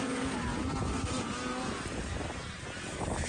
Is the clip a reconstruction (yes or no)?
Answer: no